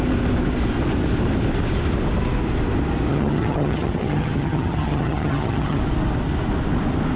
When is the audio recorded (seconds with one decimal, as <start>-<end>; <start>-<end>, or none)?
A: 0.0-3.1; 5.8-7.2